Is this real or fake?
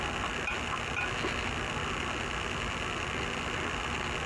real